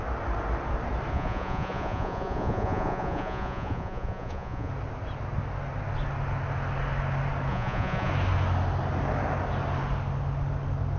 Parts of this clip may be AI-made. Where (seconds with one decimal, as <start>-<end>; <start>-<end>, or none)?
1.1-4.7; 7.5-8.1